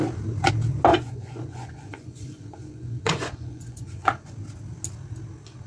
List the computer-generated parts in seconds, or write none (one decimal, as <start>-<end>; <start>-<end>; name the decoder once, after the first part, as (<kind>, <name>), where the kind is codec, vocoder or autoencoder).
0.9-4.3 (vocoder, Vocos)